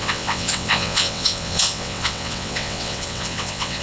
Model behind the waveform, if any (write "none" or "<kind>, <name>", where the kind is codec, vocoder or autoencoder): vocoder, WaveNeXt